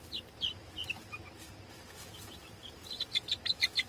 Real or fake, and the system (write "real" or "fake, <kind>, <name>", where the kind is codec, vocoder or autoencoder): real